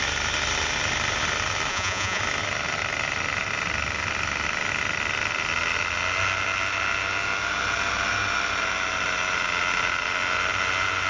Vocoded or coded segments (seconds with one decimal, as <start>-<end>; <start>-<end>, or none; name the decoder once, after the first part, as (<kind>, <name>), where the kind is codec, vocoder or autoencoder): 1.7-2.2 (vocoder, Vocos)